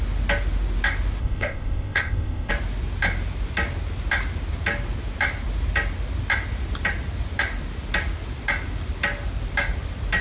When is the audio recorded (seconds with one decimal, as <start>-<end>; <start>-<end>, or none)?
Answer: 0.0-1.2; 2.5-10.2

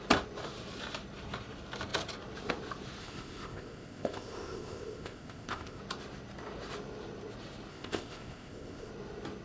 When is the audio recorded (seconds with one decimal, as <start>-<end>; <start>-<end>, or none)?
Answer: 0.0-3.0; 5.8-7.7; 8.9-9.4

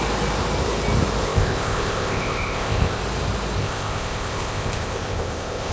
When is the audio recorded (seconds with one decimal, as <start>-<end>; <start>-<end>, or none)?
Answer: 0.0-1.2; 3.0-3.6